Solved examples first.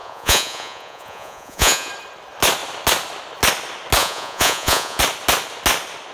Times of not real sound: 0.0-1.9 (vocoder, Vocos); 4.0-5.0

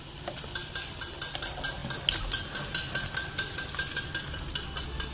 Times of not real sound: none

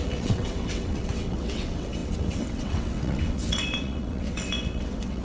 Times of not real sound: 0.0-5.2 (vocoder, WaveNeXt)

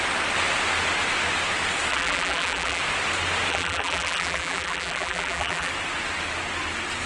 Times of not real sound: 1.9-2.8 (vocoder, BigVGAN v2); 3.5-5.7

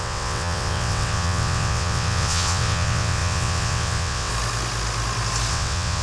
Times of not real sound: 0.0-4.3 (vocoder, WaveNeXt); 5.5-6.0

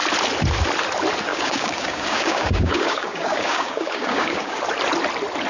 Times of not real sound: 1.3-4.6 (codec, DAC)

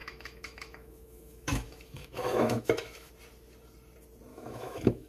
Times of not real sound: 0.0-3.1 (autoencoder, DAC-VAE); 4.3-5.1

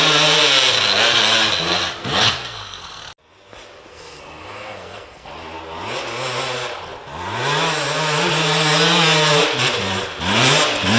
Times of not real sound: 2.0-3.0 (codec, SNAC); 3.9-5.3